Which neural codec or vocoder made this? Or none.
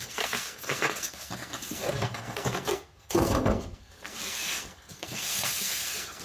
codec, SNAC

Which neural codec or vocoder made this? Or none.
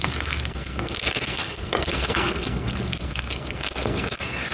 codec, SNAC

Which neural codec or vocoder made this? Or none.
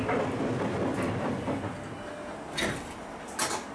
none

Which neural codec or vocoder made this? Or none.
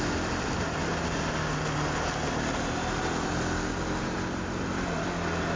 none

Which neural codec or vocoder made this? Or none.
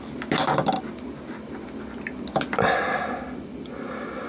none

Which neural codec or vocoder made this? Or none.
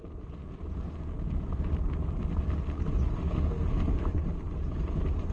none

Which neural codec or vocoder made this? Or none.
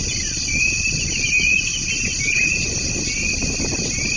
none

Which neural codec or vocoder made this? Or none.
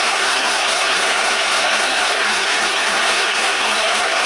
codec, SNAC